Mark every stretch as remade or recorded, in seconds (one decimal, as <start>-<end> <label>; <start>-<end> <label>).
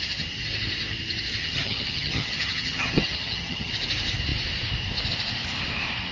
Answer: 0.0-1.4 recorded; 1.4-3.7 remade; 3.7-6.1 recorded